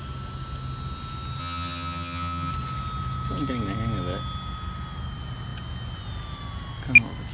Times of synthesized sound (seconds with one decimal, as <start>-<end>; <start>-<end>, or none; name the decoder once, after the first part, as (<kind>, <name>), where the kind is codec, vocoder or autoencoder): 1.4-2.5 (vocoder, HiFi-GAN)